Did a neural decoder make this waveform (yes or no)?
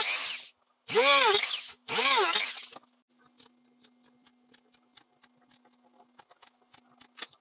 no